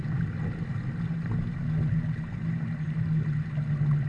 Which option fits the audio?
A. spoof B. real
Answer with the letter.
B